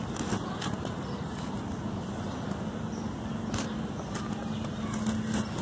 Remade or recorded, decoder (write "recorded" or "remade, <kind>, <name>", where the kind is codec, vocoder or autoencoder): recorded